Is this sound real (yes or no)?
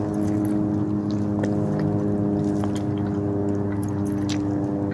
yes